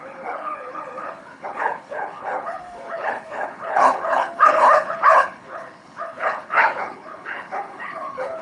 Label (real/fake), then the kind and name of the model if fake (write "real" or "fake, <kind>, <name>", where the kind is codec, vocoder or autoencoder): fake, codec, HILCodec